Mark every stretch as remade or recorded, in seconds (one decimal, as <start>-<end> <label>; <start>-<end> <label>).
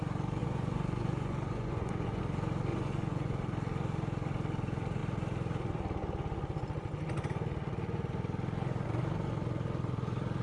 0.0-0.4 recorded; 0.4-2.2 remade; 2.2-2.7 recorded; 2.7-3.3 remade; 3.3-10.4 recorded